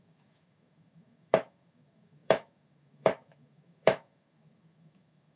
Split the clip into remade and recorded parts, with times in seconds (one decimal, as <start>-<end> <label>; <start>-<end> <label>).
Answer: 0.0-5.4 remade